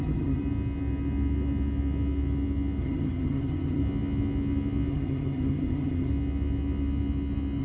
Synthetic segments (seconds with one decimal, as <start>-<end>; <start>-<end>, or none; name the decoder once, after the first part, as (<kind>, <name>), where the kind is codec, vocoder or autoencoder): 0.0-0.4 (vocoder, HiFi-GAN); 2.8-3.8; 4.9-6.1